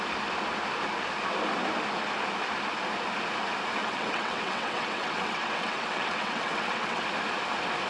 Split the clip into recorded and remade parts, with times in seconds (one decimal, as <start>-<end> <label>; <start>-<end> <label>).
0.0-3.8 recorded; 3.8-7.0 remade; 7.0-7.9 recorded